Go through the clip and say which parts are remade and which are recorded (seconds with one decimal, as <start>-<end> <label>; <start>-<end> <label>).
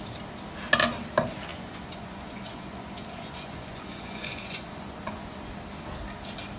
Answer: 0.0-1.5 recorded; 1.5-5.5 remade; 5.5-6.6 recorded